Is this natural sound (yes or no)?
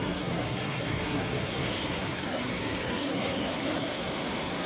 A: no